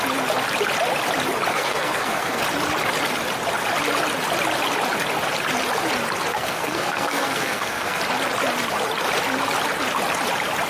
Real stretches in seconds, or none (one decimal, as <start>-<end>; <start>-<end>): 0.0-1.5; 2.4-6.3; 8.0-10.7